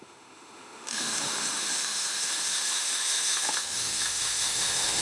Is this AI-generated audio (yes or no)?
yes